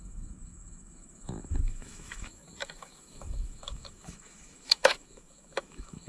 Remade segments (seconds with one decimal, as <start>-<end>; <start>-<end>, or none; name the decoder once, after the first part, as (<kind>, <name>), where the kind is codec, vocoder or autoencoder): 0.0-6.1 (autoencoder, DAC-VAE)